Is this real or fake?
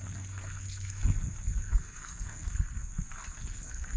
fake